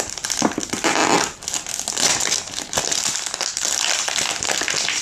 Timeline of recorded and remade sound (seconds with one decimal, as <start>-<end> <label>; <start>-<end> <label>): 0.0-1.0 remade; 1.0-1.9 recorded; 1.9-5.0 remade